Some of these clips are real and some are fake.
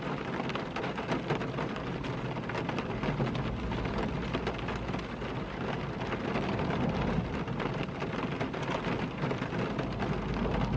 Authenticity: real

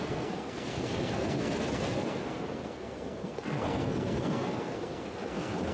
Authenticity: fake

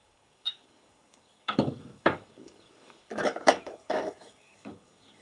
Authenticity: fake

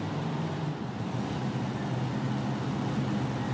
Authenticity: real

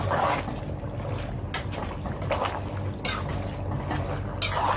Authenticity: real